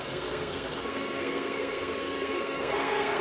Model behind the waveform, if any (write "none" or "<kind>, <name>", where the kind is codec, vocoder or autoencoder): codec, SNAC